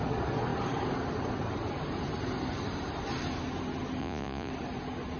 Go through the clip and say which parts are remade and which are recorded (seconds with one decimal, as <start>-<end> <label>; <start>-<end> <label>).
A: 0.0-4.0 recorded; 4.0-4.5 remade; 4.5-5.2 recorded